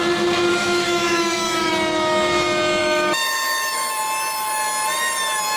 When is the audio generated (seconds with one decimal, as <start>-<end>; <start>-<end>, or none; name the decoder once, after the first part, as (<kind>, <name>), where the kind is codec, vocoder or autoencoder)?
0.5-1.7 (autoencoder, DAC-VAE); 2.8-4.0